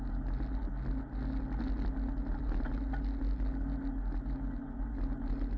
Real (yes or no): yes